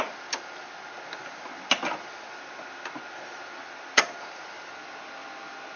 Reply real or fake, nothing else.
real